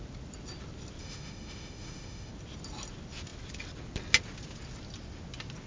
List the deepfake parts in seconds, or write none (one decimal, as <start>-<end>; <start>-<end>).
1.0-2.3